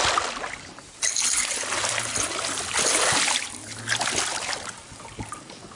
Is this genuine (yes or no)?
yes